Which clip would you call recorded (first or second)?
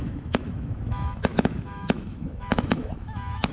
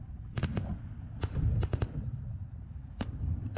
second